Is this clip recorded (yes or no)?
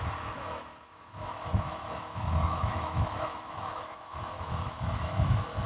no